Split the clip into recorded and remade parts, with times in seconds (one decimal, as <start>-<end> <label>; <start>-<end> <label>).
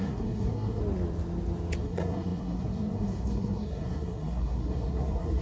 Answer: 0.0-0.8 remade; 0.8-1.8 recorded; 1.8-5.4 remade